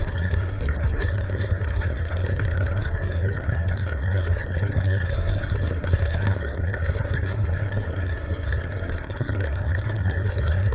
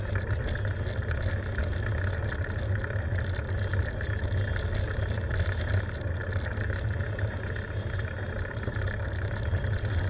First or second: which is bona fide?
second